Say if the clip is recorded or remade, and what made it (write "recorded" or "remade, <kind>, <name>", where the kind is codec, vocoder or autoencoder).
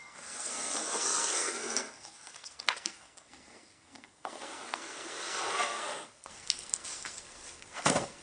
remade, codec, SNAC